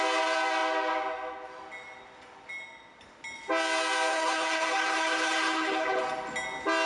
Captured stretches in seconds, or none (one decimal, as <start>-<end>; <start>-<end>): 0.0-4.1; 6.0-6.9